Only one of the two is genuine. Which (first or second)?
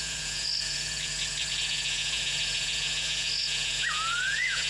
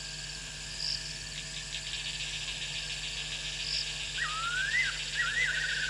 second